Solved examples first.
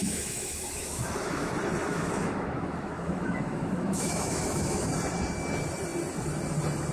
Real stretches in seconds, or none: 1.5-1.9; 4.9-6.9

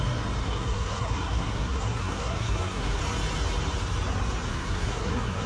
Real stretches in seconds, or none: 0.0-0.4; 3.0-4.5

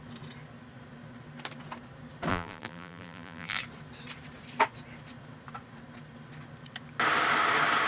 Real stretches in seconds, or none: 0.0-2.3; 3.6-7.9

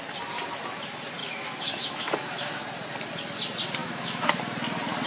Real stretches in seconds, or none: 0.0-1.2; 2.5-3.8; 4.4-5.1